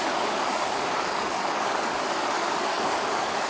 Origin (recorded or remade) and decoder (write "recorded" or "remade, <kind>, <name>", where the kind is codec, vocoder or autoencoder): remade, codec, DAC